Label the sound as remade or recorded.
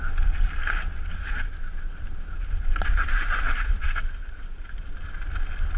recorded